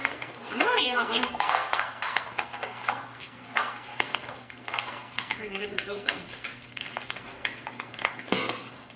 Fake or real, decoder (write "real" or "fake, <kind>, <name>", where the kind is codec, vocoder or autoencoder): fake, codec, SNAC